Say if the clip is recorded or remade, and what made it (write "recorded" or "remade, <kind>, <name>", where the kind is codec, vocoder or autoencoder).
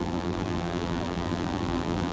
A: remade, vocoder, BigVGAN v2